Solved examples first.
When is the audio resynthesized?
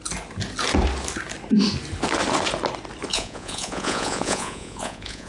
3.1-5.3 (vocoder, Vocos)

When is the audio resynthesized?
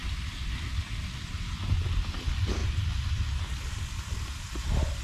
none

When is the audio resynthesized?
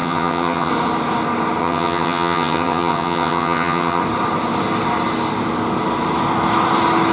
0.0-0.7 (vocoder, HiFi-GAN); 1.6-4.0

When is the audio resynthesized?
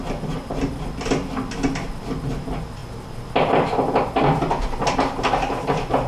none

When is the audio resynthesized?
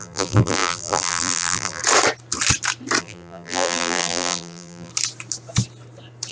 0.0-1.8 (vocoder, BigVGAN v2); 3.0-4.9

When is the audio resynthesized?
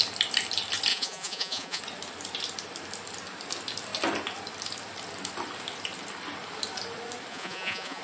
0.9-1.8 (vocoder, Vocos); 7.3-8.0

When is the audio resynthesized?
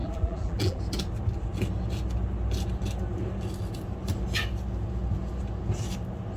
0.0-0.8 (vocoder, BigVGAN v2)